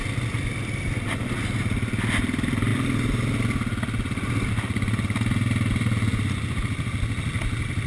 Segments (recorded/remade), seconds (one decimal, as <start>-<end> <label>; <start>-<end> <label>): 0.0-7.9 recorded